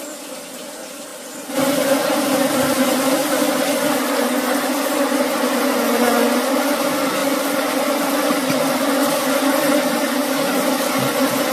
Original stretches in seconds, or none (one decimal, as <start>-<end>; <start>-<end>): 0.0-11.5